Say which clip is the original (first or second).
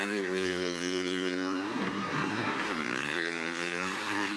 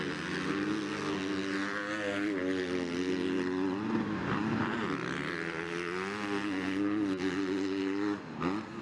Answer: second